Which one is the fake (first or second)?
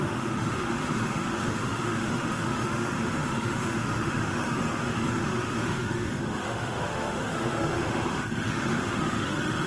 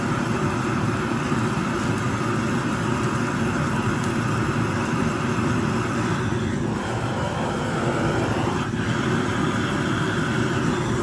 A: first